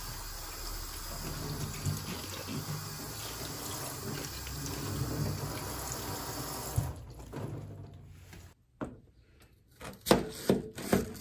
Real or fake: real